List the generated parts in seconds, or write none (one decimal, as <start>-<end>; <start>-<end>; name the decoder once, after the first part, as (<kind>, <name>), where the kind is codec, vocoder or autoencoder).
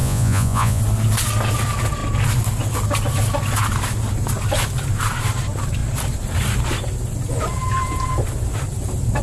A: 0.0-0.8 (vocoder, Vocos)